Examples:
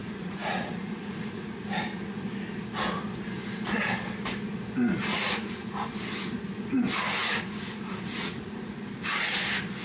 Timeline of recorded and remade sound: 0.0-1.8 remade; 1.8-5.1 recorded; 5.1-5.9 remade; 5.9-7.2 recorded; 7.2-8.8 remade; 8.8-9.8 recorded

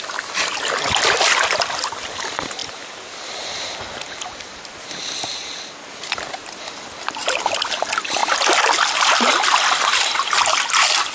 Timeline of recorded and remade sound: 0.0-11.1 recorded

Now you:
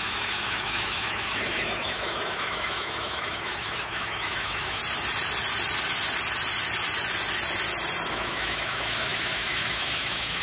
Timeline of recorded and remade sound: 0.0-4.8 remade; 4.8-8.1 recorded; 8.1-10.4 remade

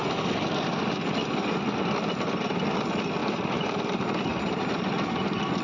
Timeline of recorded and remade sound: 0.0-3.2 recorded; 3.2-3.8 remade; 3.8-4.3 recorded; 4.3-4.9 remade; 4.9-5.6 recorded

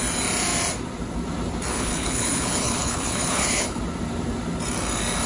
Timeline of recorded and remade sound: 0.0-1.7 recorded; 1.7-3.8 remade; 3.8-5.3 recorded